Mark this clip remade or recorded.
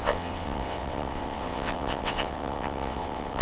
remade